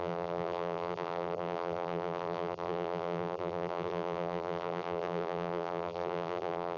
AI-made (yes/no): yes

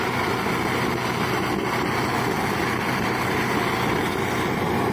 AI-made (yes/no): no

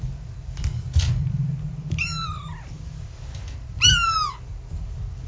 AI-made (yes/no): no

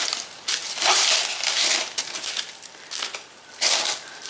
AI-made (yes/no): no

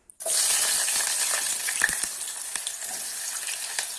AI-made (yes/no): no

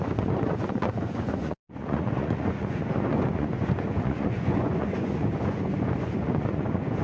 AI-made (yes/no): yes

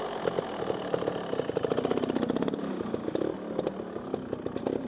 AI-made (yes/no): no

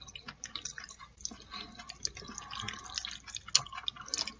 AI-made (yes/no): no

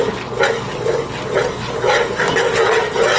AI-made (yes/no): no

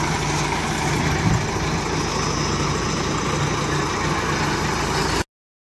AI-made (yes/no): no